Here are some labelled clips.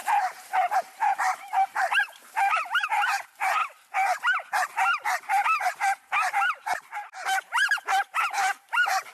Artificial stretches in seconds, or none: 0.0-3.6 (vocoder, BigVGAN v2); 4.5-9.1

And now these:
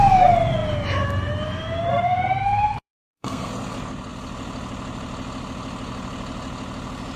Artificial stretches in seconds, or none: 1.9-3.5 (codec, SNAC)

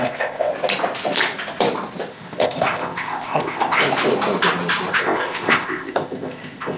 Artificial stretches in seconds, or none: 0.0-0.5 (codec, ZipCodec); 2.1-3.8; 4.9-6.8